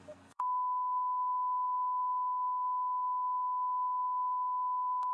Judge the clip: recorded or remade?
remade